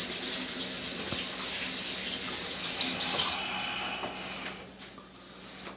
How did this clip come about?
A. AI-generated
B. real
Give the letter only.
B